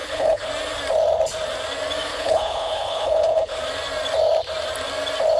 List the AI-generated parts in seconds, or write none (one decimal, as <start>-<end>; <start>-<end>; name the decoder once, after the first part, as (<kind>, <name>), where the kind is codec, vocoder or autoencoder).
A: 0.0-0.5 (codec, HILCodec); 2.1-3.6